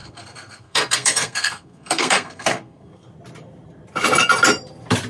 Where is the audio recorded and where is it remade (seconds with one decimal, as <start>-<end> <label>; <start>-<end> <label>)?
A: 0.0-3.1 remade; 3.1-5.1 recorded